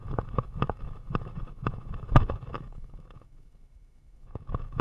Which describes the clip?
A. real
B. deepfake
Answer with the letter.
B